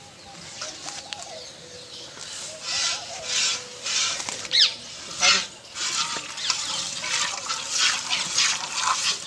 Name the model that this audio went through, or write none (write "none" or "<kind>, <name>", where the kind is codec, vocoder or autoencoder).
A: none